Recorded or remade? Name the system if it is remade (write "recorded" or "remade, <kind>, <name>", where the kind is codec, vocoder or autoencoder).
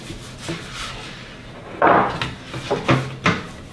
recorded